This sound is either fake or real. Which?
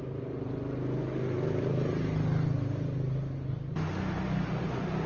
real